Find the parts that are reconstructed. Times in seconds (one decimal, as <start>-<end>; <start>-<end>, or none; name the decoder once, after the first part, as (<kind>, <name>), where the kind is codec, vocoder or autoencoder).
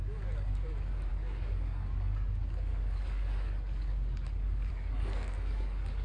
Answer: 0.0-6.0 (codec, DAC)